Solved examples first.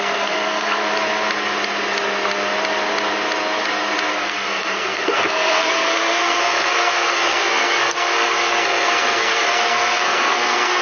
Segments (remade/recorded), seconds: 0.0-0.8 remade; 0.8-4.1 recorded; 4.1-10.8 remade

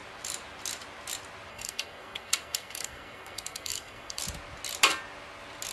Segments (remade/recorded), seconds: 0.0-1.5 recorded; 1.5-4.2 remade; 4.2-5.7 recorded

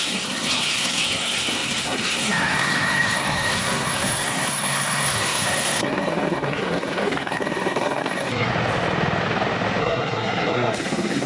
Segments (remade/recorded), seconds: 0.0-8.5 remade; 8.5-9.8 recorded; 9.8-11.3 remade

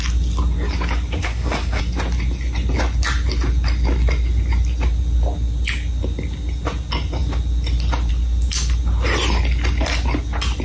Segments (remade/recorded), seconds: 0.0-1.2 recorded; 1.2-1.8 remade; 1.8-10.6 recorded

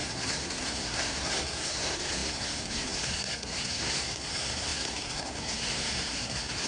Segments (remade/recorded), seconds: 0.0-6.7 remade

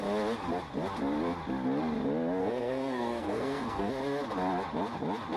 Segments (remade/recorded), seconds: 0.0-2.4 recorded; 2.4-3.9 remade; 3.9-5.4 recorded

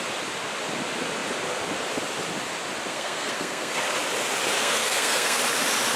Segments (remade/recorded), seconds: 0.0-2.9 recorded; 2.9-3.8 remade; 3.8-4.6 recorded; 4.6-5.4 remade; 5.4-6.0 recorded

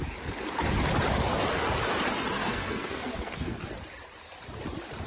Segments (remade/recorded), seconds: 0.0-2.4 recorded; 2.4-3.7 remade; 3.7-5.1 recorded